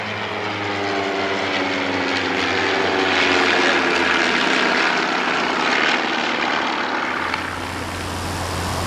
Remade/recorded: recorded